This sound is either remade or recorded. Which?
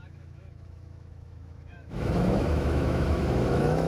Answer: remade